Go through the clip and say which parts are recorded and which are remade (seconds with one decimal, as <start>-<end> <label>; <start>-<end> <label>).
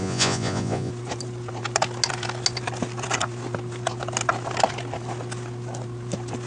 0.0-0.9 remade; 0.9-6.5 recorded